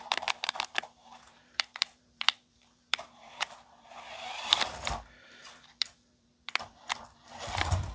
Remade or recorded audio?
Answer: remade